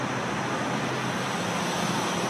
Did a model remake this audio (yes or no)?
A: no